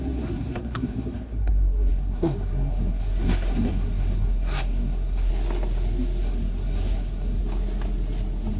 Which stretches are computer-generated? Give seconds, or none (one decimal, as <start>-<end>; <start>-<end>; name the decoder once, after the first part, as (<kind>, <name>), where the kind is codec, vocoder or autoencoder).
0.0-5.3 (codec, SNAC); 6.2-7.4